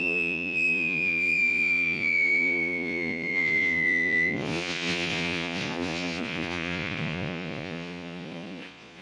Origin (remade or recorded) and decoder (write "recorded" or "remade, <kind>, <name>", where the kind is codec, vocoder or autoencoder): remade, vocoder, Vocos